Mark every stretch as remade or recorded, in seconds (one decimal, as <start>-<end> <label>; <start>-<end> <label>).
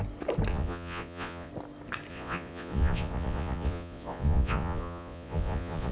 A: 0.0-0.5 recorded; 0.5-1.5 remade; 1.5-2.1 recorded; 2.1-5.9 remade